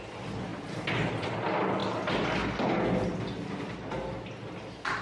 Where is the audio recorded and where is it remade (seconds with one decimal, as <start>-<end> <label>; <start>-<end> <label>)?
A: 0.0-5.0 recorded